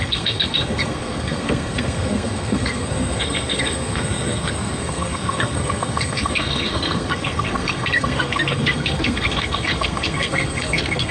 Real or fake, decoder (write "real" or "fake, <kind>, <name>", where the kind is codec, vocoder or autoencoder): fake, codec, SNAC